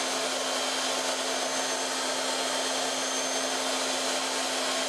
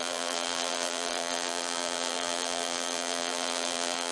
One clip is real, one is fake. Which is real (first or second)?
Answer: first